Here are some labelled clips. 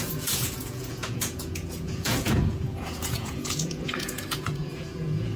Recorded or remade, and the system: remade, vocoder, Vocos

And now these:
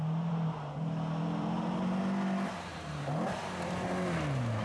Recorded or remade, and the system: recorded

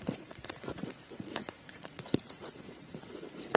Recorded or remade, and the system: remade, vocoder, Vocos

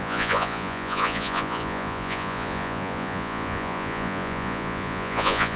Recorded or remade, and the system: remade, vocoder, Vocos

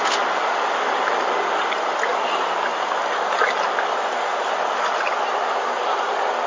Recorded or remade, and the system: recorded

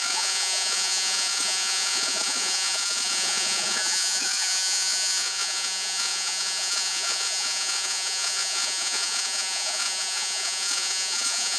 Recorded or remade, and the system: remade, vocoder, Vocos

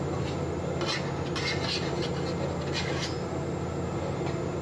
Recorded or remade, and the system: recorded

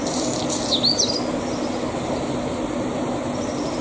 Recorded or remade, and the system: recorded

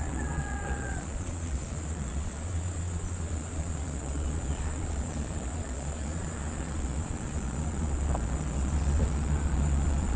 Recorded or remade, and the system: remade, vocoder, Vocos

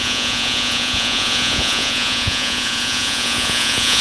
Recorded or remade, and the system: remade, vocoder, Vocos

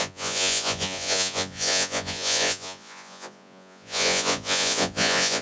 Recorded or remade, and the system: remade, vocoder, Vocos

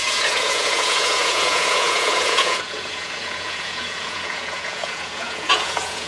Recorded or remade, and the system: remade, vocoder, Vocos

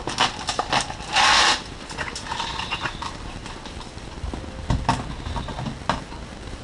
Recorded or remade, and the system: recorded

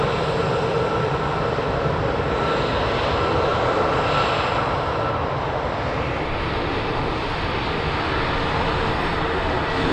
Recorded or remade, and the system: recorded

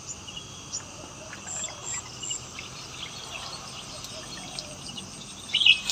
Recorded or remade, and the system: recorded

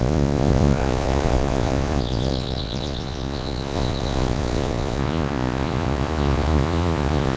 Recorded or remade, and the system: remade, vocoder, Vocos